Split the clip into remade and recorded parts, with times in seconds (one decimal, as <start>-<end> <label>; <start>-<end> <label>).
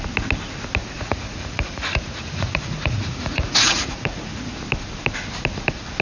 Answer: 0.0-0.8 recorded; 0.8-4.4 remade; 4.4-6.0 recorded